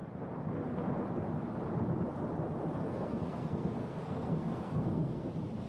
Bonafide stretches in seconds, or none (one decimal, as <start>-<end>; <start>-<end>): 0.0-2.8; 5.3-5.7